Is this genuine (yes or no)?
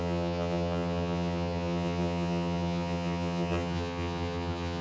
no